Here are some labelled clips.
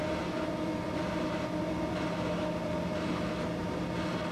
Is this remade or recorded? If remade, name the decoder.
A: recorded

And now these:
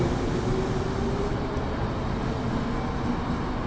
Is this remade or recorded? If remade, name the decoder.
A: recorded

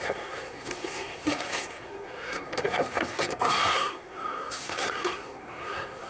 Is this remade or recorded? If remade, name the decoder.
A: remade, codec, SNAC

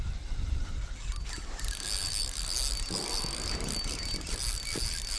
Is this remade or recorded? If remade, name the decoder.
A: recorded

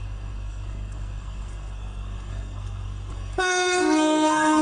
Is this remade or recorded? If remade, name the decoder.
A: remade, codec, SNAC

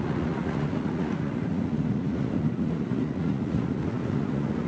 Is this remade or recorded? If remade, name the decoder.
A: remade, vocoder, Vocos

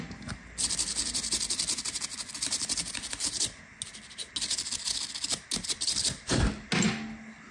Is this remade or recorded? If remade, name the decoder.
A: recorded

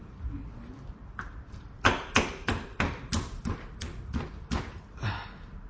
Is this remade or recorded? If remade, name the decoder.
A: recorded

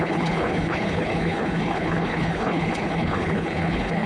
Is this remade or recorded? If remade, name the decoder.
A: remade, codec, HILCodec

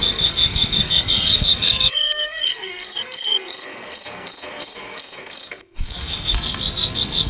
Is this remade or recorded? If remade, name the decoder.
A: remade, codec, SNAC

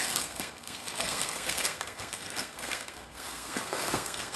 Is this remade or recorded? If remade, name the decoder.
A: remade, codec, SNAC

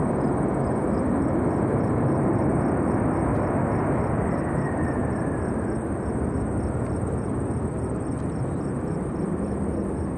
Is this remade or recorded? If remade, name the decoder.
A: recorded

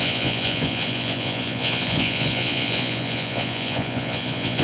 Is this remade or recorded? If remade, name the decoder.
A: remade, vocoder, Vocos